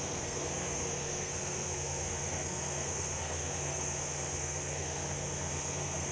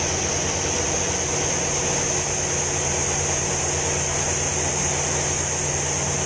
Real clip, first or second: second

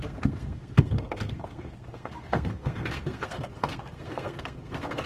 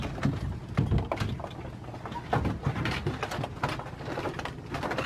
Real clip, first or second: second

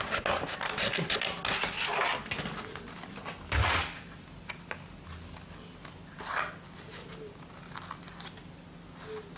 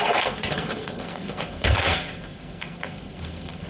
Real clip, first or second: first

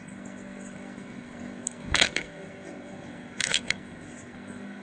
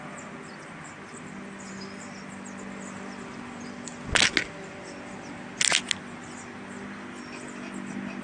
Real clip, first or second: second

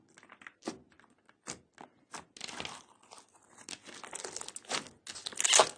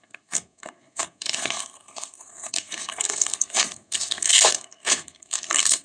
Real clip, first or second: first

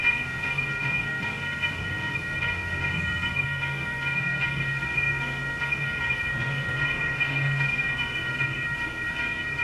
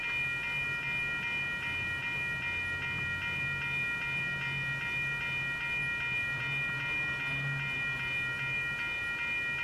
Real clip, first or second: second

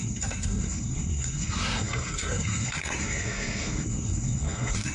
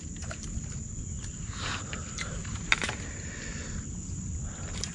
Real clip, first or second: second